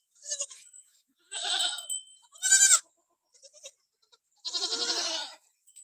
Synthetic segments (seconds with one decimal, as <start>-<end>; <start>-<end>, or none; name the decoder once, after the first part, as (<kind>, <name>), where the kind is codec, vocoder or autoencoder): 0.0-1.4 (autoencoder, DAC-VAE); 4.9-5.8